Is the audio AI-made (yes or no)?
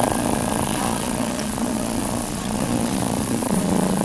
yes